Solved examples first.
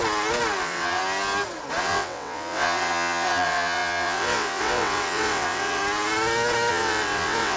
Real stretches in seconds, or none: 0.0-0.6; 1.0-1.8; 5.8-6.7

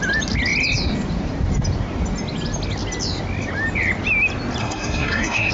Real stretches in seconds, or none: 0.0-4.6

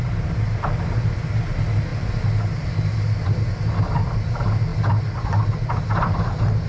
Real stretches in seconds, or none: 0.0-6.7

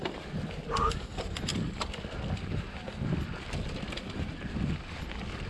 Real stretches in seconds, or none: 0.0-5.5

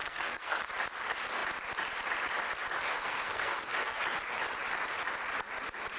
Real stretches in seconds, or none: 0.7-2.9; 4.0-6.0